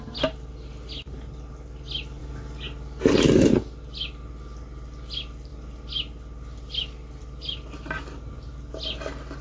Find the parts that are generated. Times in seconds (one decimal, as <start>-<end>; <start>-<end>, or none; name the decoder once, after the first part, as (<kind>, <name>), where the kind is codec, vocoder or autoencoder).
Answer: none